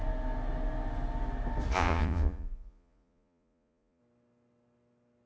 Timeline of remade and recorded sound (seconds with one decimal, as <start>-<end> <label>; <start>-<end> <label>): 0.0-1.7 recorded; 1.7-4.0 remade; 4.0-5.3 recorded